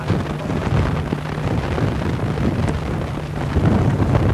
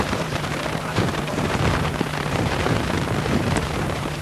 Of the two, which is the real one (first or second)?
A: first